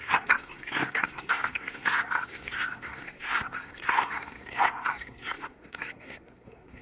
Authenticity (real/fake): fake